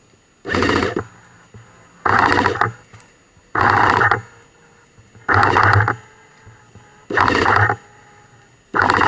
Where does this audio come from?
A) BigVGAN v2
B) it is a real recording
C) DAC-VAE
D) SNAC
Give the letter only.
B